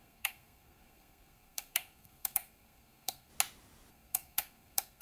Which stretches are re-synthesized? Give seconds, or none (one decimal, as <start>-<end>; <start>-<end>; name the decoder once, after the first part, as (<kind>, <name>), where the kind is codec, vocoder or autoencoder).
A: 0.0-3.3 (codec, SNAC); 3.9-5.0